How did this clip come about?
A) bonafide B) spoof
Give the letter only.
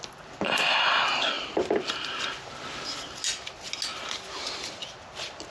A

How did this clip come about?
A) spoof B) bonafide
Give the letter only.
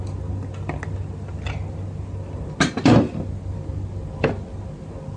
B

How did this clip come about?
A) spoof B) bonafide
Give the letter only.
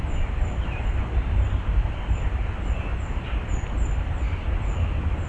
B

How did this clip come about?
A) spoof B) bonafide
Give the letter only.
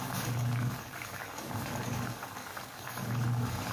A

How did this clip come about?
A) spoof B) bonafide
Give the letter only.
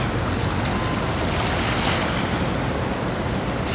B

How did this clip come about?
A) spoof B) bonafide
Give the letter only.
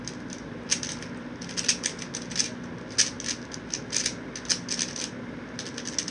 B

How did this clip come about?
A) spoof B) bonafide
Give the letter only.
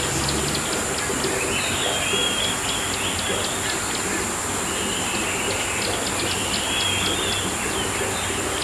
B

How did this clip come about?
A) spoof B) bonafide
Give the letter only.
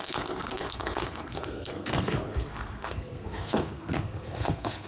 A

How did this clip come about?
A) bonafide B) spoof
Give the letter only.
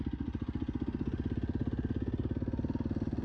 A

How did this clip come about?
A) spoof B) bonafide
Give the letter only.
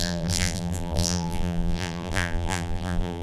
A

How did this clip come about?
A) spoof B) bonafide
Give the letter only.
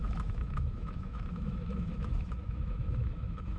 A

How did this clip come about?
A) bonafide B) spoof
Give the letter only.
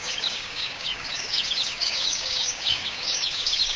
B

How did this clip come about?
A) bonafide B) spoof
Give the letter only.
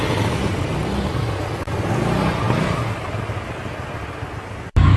A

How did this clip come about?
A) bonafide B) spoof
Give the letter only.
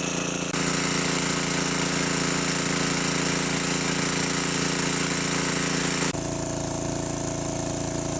A